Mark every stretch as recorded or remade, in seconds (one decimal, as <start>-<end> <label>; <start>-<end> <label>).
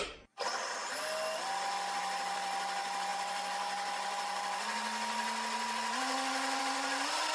0.0-7.3 recorded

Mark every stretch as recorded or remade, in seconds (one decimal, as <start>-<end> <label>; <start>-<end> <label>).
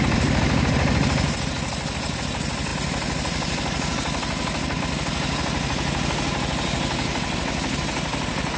0.0-8.6 recorded